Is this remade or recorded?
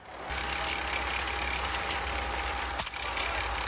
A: recorded